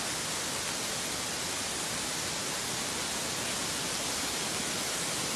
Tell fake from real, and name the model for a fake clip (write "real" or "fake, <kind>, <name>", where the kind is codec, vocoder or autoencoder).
real